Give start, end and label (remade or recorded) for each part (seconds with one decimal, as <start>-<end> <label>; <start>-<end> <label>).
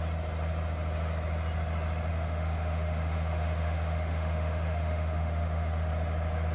0.0-2.1 recorded; 2.1-5.9 remade; 5.9-6.5 recorded